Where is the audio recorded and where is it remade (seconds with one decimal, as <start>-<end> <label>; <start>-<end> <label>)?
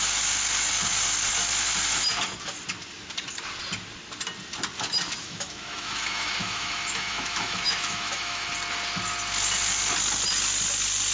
0.0-5.2 recorded; 5.2-8.5 remade; 8.5-11.1 recorded